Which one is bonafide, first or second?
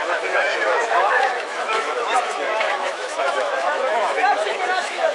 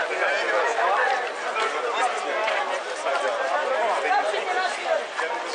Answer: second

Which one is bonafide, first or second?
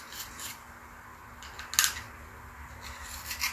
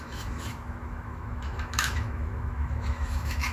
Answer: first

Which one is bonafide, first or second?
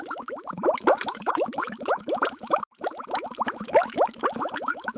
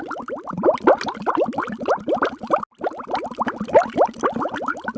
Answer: second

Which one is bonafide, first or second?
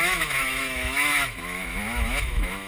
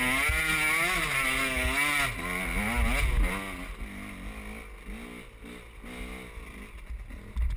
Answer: second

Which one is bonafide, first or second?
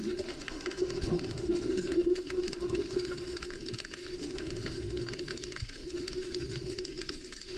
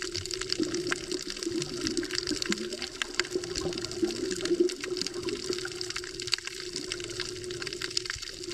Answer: second